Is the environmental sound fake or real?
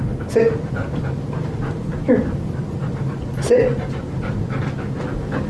real